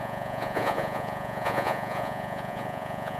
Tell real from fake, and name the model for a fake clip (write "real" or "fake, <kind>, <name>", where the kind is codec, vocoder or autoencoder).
fake, vocoder, Vocos